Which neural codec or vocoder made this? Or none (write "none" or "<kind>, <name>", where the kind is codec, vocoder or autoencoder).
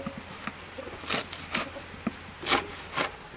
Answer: none